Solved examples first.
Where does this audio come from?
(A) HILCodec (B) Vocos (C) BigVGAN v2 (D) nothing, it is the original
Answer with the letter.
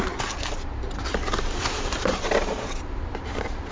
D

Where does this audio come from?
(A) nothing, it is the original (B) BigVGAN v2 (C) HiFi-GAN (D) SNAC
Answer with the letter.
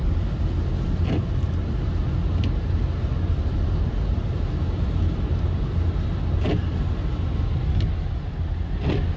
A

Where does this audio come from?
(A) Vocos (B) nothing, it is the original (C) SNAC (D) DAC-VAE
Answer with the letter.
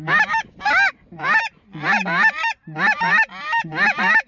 B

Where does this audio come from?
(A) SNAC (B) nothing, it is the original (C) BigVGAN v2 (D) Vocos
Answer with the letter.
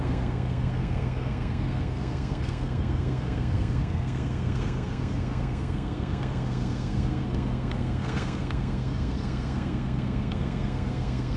A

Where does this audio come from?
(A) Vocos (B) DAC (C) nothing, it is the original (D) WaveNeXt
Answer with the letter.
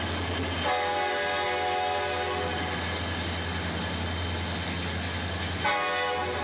C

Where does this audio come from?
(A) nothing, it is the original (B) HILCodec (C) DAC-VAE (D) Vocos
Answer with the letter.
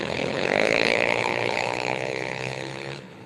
B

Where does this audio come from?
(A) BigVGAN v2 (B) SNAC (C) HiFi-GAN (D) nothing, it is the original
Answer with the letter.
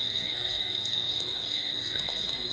B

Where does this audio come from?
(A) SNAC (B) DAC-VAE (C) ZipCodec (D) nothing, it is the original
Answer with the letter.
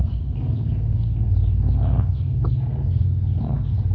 A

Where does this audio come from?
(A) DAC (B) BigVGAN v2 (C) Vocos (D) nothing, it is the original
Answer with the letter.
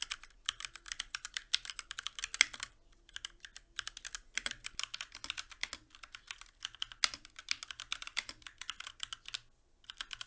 D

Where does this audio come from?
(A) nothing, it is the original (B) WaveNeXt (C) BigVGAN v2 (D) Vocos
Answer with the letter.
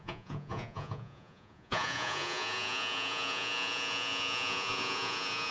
D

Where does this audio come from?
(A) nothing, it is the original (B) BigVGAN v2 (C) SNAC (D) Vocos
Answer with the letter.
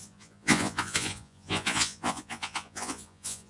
D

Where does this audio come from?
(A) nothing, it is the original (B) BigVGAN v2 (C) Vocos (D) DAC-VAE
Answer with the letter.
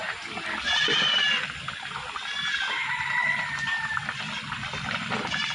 A